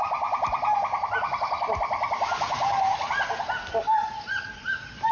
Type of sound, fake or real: real